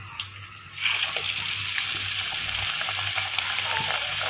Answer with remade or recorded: recorded